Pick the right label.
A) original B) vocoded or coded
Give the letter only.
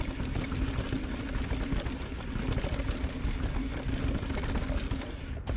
A